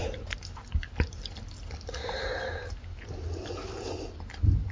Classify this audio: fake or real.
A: real